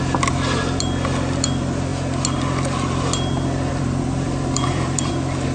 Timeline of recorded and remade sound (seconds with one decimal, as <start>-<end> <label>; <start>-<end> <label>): 0.0-3.7 recorded; 3.7-5.1 remade; 5.1-5.5 recorded